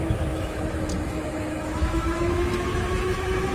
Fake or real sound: fake